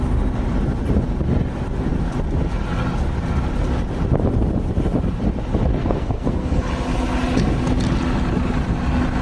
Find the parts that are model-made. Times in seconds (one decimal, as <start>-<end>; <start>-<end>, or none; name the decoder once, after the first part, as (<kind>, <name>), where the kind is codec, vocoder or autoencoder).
5.8-6.6 (codec, SNAC)